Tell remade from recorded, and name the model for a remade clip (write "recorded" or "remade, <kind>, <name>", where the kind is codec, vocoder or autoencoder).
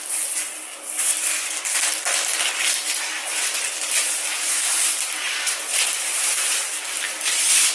recorded